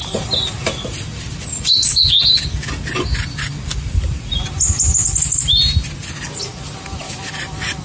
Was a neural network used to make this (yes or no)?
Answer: no